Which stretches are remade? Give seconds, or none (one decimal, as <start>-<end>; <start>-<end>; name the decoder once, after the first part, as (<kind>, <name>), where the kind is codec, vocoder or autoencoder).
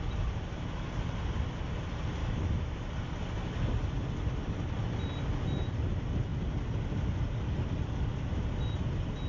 2.2-2.9 (autoencoder, DAC-VAE)